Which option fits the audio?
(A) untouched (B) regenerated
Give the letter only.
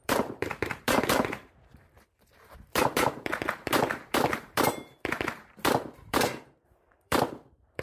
B